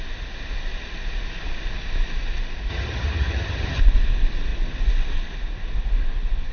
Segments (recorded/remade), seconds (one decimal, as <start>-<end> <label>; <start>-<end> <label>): 0.0-2.7 recorded; 2.7-3.8 remade; 3.8-6.5 recorded